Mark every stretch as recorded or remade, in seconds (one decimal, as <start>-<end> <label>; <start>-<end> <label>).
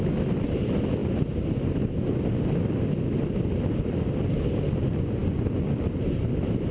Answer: 0.0-6.7 recorded